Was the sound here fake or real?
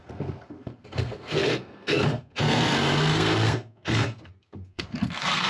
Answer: fake